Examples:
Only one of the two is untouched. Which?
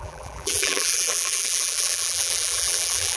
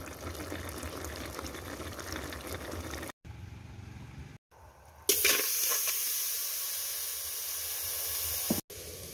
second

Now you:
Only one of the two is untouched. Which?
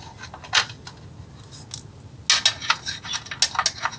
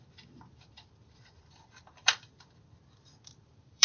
first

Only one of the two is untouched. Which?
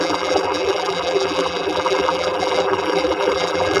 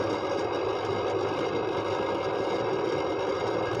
second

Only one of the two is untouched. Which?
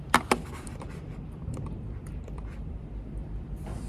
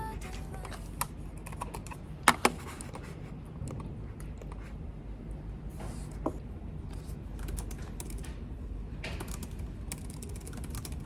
second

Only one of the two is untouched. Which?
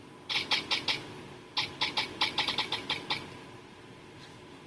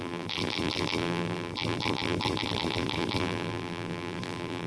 first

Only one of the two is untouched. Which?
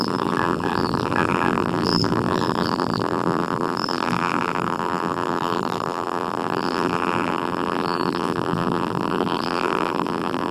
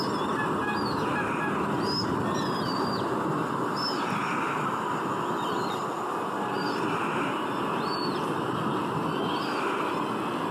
second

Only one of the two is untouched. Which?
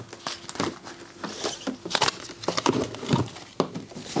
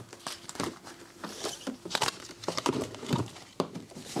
first